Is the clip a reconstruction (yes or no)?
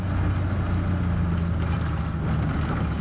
no